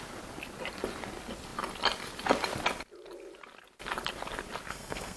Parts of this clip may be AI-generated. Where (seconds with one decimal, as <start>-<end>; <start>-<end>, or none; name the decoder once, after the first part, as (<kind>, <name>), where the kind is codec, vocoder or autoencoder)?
4.7-5.2 (codec, SNAC)